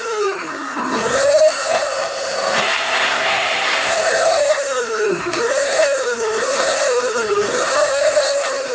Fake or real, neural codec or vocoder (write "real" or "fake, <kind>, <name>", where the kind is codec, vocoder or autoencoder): fake, codec, SNAC